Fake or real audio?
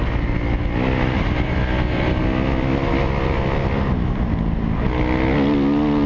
real